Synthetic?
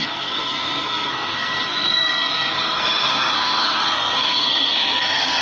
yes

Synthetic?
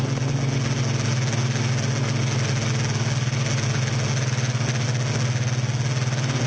no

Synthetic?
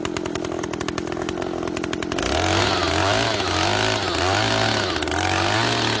no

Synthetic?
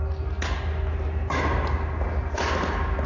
no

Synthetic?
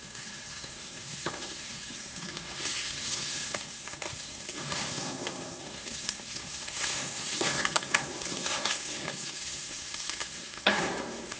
yes